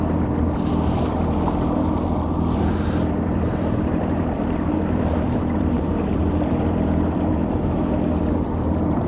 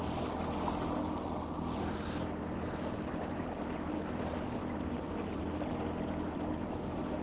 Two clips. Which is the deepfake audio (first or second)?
first